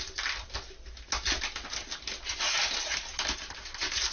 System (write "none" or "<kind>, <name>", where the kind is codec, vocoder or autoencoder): none